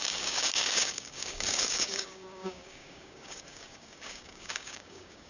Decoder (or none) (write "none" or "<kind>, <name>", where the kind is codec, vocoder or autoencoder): codec, DAC